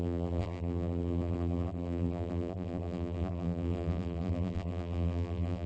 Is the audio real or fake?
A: fake